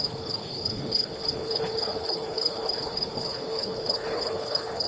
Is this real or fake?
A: fake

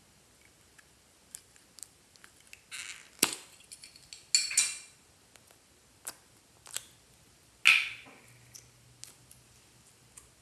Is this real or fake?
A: real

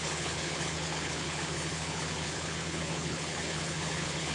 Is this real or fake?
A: fake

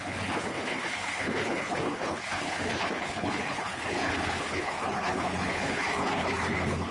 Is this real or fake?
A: fake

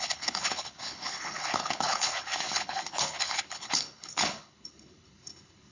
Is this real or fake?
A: fake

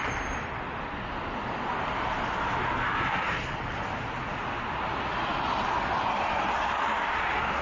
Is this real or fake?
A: real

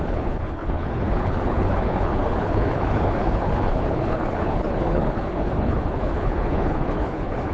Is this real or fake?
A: fake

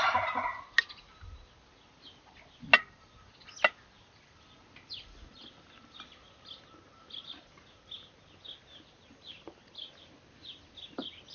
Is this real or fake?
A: real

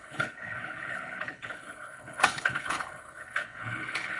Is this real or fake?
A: fake